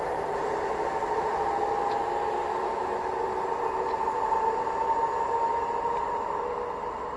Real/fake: fake